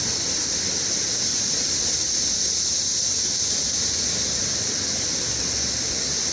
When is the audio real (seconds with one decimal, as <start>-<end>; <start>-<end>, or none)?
0.0-1.3; 5.1-6.3